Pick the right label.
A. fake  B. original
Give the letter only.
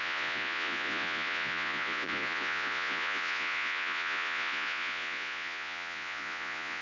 A